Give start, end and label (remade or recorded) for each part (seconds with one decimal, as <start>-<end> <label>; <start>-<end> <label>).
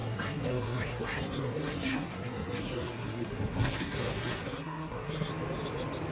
0.0-5.3 remade; 5.3-6.1 recorded